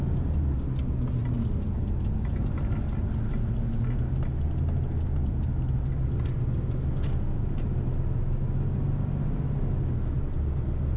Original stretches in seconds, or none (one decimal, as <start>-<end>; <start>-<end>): 0.0-11.0